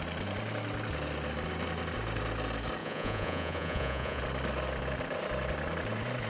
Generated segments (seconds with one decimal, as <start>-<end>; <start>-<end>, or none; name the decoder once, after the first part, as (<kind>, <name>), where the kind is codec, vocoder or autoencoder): 2.8-4.2 (vocoder, Vocos)